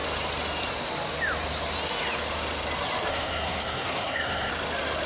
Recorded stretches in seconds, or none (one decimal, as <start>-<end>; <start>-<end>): 0.0-3.1; 4.5-5.1